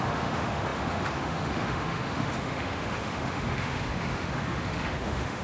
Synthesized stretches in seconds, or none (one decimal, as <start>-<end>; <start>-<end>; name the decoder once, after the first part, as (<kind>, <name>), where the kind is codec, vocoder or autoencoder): 0.0-5.4 (autoencoder, DAC-VAE)

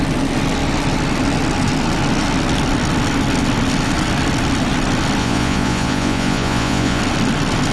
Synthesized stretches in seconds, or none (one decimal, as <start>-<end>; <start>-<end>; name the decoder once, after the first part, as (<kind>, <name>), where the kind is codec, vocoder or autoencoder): 5.2-7.0 (vocoder, Vocos)

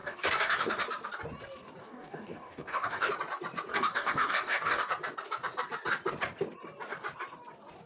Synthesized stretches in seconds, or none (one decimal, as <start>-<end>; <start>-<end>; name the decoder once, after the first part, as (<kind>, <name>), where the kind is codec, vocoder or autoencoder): 0.0-0.8 (codec, DAC); 1.8-3.1; 3.7-4.9

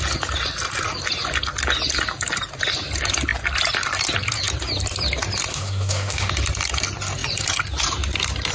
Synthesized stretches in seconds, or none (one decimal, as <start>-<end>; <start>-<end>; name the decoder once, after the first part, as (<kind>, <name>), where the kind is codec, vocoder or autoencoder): 5.5-6.3 (autoencoder, DAC-VAE)

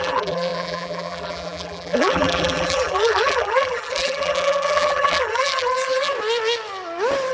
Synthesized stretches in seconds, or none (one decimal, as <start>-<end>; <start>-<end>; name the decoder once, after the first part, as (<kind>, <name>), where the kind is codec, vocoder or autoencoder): 0.0-6.1 (vocoder, BigVGAN v2)

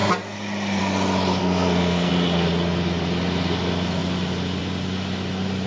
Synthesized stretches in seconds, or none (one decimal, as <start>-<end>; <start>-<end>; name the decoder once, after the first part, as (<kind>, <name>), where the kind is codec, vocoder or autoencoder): 1.4-2.1 (codec, SNAC)